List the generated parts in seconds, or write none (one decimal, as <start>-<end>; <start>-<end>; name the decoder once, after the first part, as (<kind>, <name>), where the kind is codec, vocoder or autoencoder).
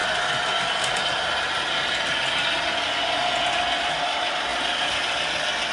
none